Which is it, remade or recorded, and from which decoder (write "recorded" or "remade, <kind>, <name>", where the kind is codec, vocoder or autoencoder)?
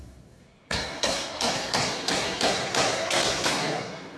remade, codec, SNAC